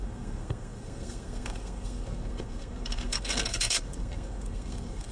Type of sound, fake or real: fake